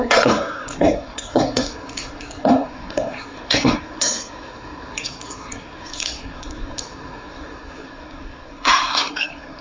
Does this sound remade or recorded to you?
remade